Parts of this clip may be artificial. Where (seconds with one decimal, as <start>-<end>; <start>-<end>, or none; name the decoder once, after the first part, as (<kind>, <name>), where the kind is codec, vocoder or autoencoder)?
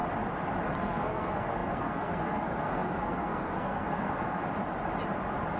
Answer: 0.8-4.4 (codec, SNAC)